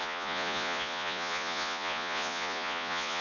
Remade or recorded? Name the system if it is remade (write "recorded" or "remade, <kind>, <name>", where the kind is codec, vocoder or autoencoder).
remade, vocoder, Vocos